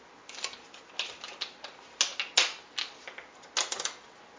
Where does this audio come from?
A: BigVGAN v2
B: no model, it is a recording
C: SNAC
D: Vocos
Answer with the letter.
B